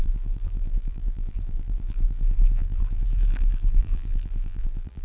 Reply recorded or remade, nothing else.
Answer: remade